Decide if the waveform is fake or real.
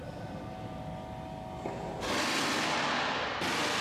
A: real